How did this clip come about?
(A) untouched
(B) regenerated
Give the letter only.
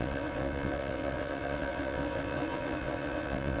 B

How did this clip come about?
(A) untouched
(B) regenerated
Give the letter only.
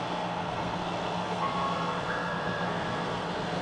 B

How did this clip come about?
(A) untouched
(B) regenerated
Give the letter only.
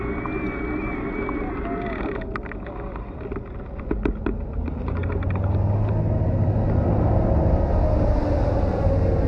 A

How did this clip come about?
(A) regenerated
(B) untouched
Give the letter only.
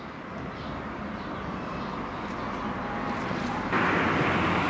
B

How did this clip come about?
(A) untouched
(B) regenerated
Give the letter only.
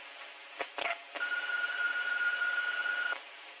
A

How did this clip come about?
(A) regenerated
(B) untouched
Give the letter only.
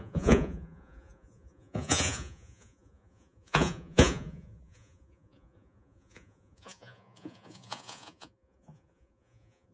A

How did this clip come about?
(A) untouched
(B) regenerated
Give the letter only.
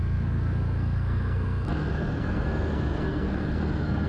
B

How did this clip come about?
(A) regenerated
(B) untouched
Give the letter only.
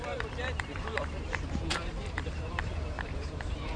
A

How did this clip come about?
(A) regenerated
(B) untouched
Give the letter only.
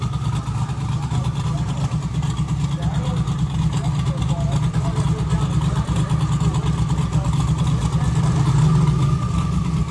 B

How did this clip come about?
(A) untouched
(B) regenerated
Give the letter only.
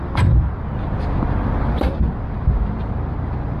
A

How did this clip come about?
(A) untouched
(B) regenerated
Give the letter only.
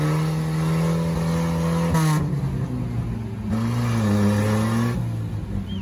A